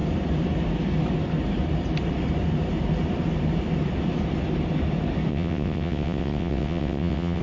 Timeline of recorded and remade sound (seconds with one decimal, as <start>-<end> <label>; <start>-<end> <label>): 0.0-5.3 recorded; 5.3-7.4 remade